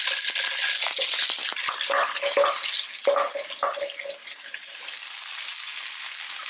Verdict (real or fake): real